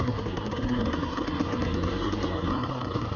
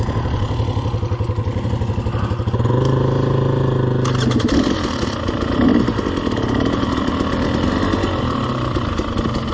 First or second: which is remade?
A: first